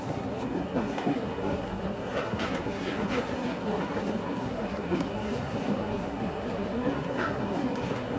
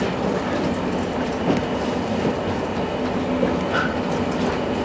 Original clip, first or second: second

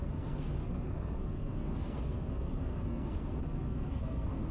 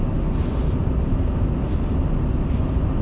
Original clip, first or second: second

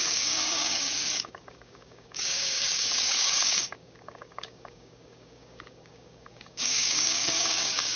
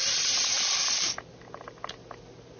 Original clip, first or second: second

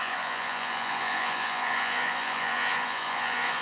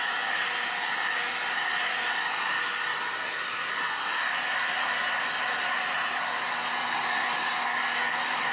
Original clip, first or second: second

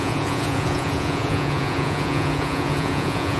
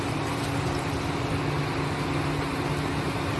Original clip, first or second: second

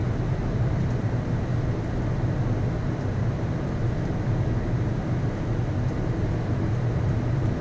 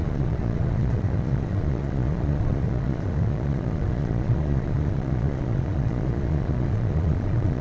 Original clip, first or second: first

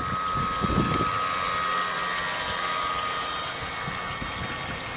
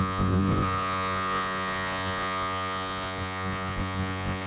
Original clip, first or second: first